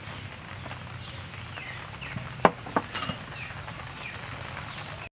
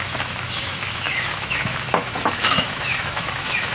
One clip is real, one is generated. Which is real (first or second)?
first